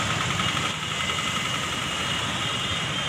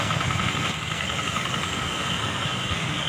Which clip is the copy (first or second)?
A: second